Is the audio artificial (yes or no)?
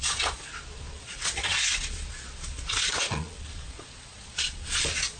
yes